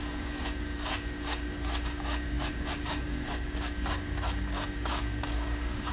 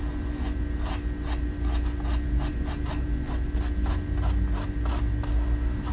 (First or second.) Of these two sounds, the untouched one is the second